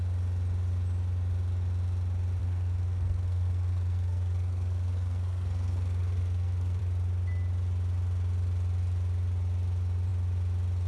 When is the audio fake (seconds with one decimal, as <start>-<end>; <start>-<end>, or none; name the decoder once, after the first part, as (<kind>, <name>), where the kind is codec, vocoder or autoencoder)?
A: 2.4-6.8 (codec, SNAC)